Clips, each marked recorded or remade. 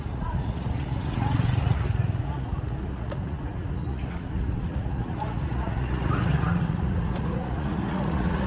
remade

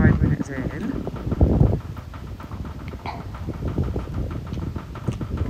recorded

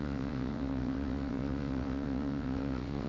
remade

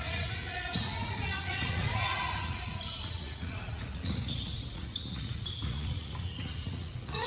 remade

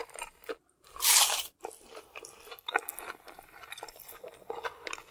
recorded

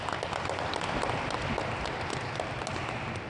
recorded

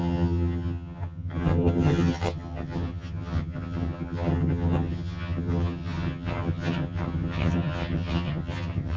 remade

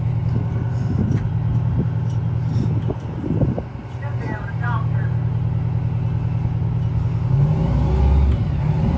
recorded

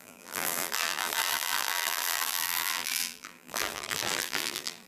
remade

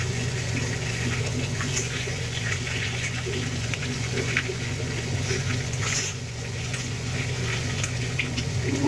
remade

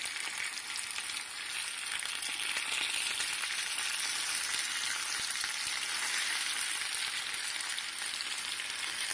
recorded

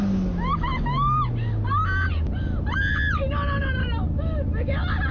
recorded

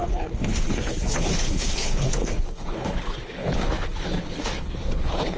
remade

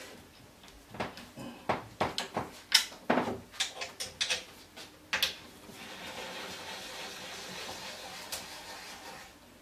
recorded